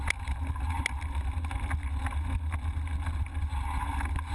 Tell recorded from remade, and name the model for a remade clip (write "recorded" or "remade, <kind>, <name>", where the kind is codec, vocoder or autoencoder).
recorded